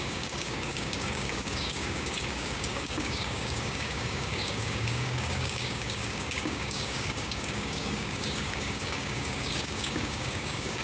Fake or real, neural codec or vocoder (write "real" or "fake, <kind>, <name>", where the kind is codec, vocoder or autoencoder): fake, codec, DAC